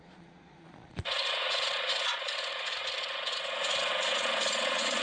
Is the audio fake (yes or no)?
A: yes